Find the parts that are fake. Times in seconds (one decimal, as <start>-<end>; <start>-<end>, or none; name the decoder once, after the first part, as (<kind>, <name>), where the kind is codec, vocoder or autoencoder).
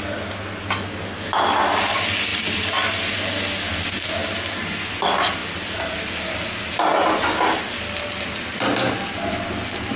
none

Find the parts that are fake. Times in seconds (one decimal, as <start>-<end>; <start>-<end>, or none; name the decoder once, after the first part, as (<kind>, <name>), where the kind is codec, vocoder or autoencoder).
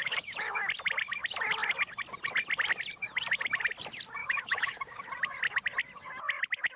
0.0-0.6 (autoencoder, DAC-VAE); 4.2-5.0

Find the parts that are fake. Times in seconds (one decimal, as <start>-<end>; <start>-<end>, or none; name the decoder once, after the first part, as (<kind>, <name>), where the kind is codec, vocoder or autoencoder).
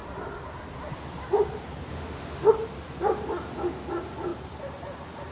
1.9-2.5 (autoencoder, DAC-VAE)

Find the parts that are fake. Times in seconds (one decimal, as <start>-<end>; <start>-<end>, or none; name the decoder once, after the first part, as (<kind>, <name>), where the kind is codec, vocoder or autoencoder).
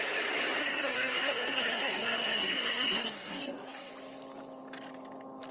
0.6-3.9 (codec, SNAC)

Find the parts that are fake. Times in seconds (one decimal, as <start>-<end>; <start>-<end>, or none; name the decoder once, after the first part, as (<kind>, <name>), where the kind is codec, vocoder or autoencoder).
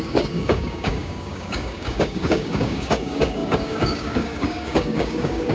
0.0-5.5 (codec, DAC)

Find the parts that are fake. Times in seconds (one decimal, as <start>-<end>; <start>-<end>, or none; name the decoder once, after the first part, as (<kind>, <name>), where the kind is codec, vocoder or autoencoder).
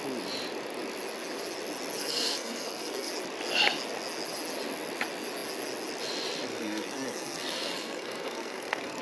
2.0-3.1 (codec, SNAC); 6.5-9.0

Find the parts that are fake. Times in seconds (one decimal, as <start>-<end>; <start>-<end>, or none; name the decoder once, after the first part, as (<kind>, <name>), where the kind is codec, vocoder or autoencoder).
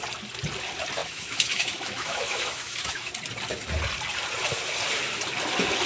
1.0-3.1 (autoencoder, DAC-VAE)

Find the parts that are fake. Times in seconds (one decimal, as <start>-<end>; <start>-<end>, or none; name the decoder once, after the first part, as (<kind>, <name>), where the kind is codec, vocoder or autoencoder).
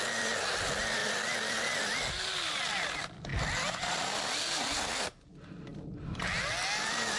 none